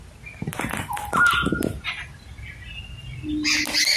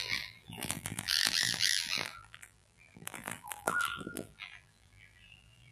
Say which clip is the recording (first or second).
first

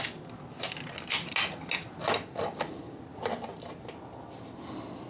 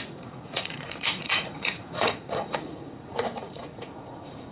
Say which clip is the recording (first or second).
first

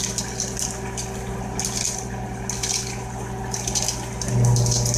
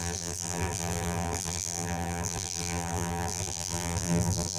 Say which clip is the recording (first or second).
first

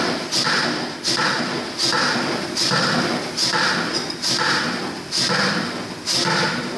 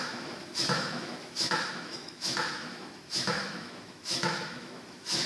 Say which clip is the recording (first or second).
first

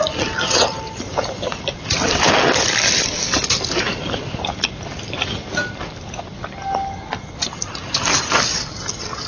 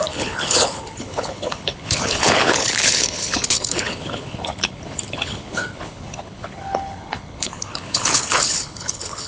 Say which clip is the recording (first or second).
first